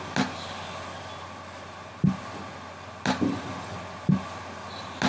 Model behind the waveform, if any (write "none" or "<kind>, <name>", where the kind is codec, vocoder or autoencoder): none